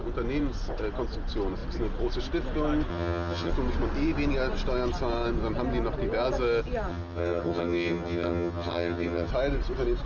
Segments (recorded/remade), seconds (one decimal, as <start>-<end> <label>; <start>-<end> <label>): 0.0-2.9 recorded; 2.9-3.5 remade; 3.5-6.9 recorded; 6.9-9.3 remade; 9.3-10.1 recorded